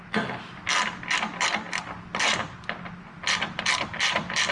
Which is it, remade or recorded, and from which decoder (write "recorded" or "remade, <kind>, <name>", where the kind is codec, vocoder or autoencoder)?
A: recorded